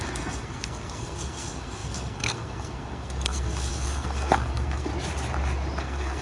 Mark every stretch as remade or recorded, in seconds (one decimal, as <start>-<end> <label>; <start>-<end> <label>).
0.0-4.9 remade; 4.9-5.8 recorded; 5.8-6.2 remade